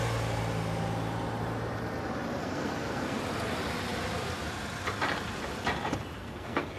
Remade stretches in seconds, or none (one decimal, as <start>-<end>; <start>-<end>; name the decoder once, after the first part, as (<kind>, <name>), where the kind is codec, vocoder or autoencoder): 2.4-3.2 (codec, SNAC); 6.2-6.8